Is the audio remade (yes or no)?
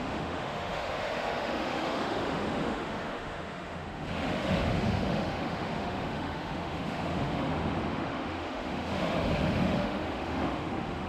yes